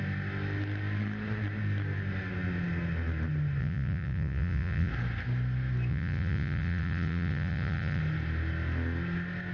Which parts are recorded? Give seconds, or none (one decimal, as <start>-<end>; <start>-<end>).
0.0-3.6; 4.9-5.9; 8.0-9.5